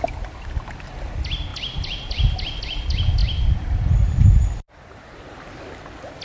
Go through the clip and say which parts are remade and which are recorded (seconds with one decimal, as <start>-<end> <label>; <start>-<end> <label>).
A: 0.0-6.2 recorded